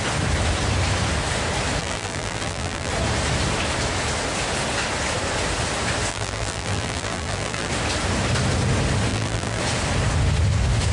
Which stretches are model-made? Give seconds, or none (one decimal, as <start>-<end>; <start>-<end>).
1.8-2.9; 6.1-7.7; 9.1-9.6